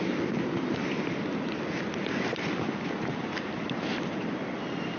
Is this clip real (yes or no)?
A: yes